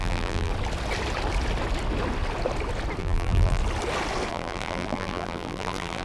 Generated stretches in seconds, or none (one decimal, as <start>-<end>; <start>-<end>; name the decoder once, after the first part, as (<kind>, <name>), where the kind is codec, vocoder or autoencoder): 0.0-0.5 (vocoder, BigVGAN v2); 3.0-3.6; 4.3-6.0